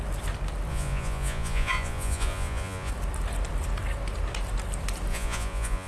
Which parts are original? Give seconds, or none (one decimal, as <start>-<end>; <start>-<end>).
0.0-0.7; 2.9-5.1